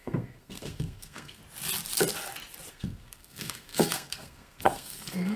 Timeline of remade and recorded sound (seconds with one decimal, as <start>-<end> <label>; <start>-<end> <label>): 0.0-1.4 remade; 1.4-2.7 recorded; 2.7-5.4 remade